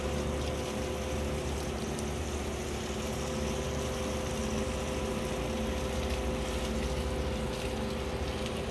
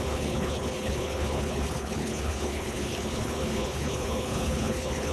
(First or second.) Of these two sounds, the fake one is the second